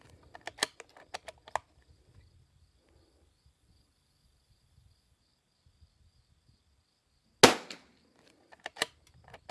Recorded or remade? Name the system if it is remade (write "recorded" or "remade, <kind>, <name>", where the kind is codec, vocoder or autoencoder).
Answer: recorded